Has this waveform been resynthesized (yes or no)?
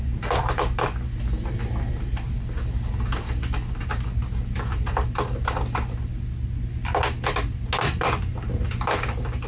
no